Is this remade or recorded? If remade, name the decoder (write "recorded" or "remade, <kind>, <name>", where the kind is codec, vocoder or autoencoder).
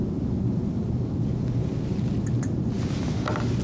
recorded